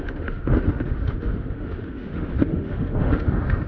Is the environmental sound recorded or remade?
remade